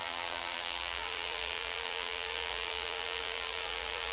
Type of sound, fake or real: fake